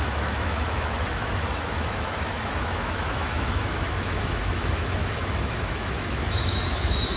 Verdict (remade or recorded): remade